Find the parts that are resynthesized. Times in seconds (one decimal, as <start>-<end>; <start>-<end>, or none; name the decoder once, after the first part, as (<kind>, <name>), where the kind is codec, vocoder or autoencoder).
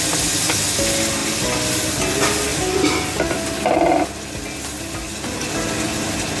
none